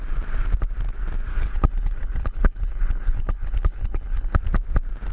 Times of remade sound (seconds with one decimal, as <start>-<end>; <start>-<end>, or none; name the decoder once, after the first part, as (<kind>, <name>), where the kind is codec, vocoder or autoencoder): 1.3-4.4 (codec, HILCodec)